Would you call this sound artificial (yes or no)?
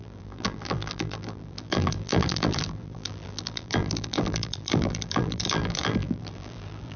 yes